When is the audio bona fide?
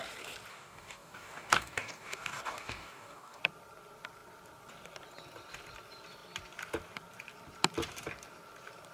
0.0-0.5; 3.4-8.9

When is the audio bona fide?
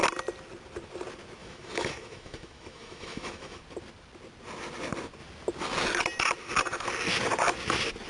0.0-1.4; 3.6-8.1